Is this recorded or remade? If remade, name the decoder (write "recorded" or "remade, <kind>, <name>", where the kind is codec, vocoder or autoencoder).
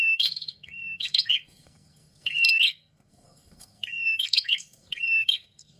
remade, codec, SNAC